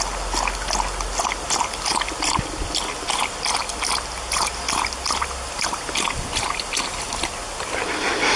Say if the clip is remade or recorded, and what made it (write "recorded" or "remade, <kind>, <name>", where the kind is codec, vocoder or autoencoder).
recorded